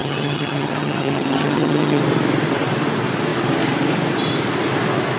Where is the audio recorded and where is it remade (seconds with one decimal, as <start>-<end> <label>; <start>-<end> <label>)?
0.0-2.0 remade; 2.0-5.2 recorded